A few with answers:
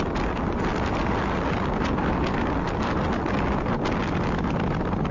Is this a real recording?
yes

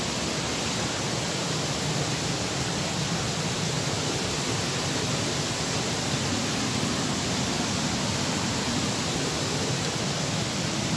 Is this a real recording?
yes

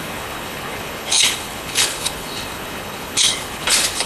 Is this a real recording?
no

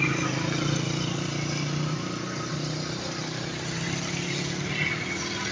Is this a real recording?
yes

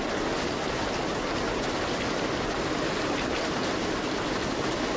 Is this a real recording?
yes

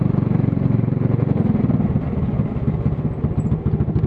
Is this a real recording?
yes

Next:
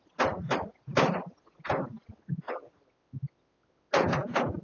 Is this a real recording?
yes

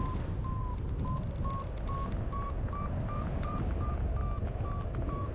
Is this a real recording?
yes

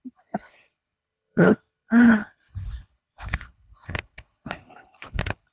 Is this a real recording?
no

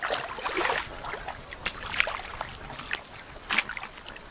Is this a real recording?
yes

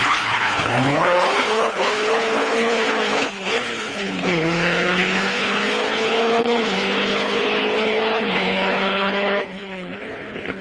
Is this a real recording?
no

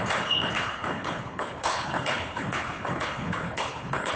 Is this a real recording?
no